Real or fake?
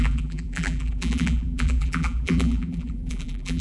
fake